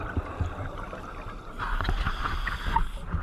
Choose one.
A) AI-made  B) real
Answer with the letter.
B